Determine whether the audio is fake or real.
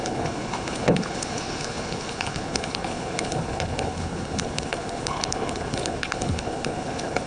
fake